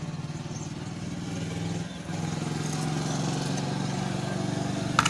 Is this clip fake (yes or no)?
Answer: no